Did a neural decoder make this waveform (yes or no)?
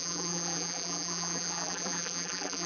yes